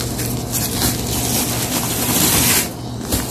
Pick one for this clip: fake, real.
real